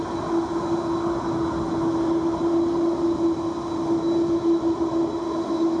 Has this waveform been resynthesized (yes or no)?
no